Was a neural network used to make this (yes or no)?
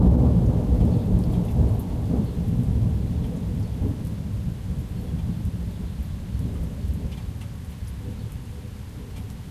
no